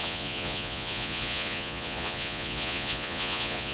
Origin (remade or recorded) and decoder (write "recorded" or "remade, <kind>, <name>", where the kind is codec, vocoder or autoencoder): remade, vocoder, Vocos